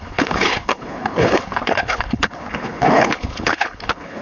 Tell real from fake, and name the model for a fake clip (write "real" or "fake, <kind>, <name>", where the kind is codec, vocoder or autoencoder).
fake, codec, HILCodec